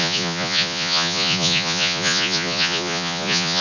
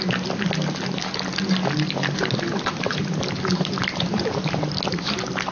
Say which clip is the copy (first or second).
first